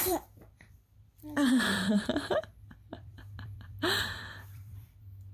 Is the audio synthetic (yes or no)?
yes